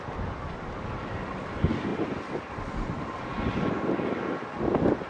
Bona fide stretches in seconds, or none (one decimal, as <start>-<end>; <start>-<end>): 0.0-5.1